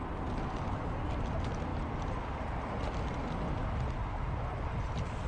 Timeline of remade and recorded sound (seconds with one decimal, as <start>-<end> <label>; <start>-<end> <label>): 0.0-5.3 recorded